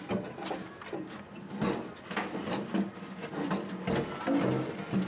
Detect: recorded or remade recorded